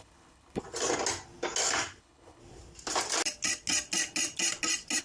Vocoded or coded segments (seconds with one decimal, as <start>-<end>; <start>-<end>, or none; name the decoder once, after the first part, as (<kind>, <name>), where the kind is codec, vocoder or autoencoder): 0.0-0.6 (codec, HILCodec); 2.0-2.4